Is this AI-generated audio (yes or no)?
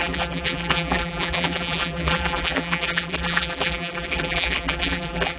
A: yes